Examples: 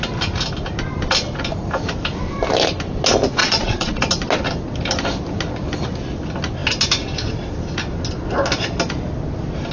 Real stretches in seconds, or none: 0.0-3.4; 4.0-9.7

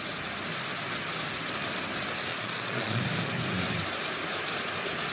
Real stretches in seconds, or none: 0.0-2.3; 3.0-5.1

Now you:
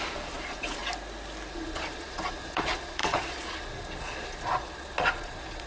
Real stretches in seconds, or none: 0.8-1.5

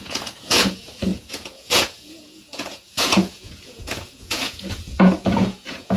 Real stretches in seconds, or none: none